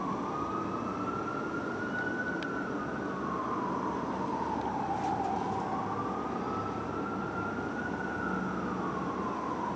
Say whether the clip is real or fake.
real